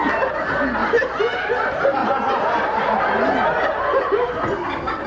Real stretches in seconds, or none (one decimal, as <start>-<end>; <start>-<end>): 0.0-5.1